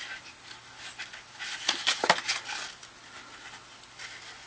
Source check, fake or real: real